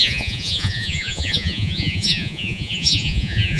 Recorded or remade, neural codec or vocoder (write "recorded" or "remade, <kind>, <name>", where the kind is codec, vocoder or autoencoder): remade, vocoder, Vocos